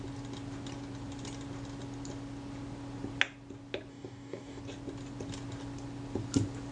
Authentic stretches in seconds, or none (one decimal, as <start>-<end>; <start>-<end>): 0.0-3.9; 4.6-6.7